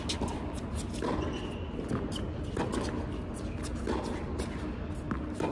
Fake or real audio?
real